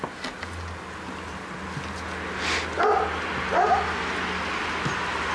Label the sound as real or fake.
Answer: real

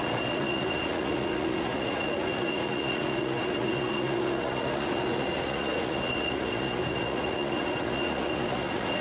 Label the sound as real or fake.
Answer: fake